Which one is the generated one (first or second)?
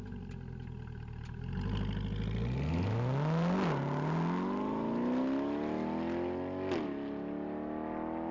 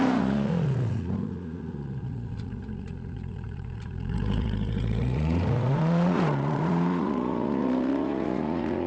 second